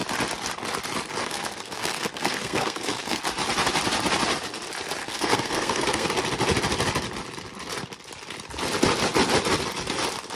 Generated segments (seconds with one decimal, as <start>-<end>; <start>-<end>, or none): 1.2-3.2; 5.0-6.1